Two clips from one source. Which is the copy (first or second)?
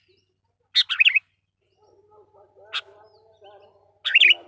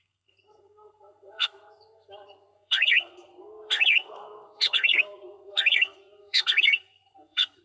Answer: second